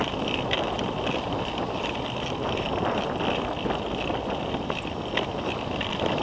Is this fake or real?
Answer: real